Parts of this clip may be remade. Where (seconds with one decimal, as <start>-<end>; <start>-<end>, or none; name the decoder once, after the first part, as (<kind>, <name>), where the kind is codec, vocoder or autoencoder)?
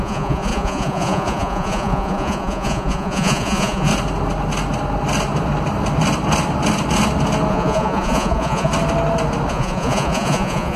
0.0-3.9 (vocoder, Vocos); 7.5-8.7; 9.5-10.8